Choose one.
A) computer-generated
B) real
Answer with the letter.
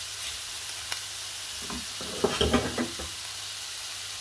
B